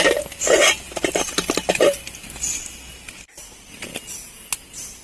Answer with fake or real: real